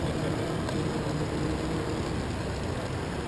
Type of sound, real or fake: real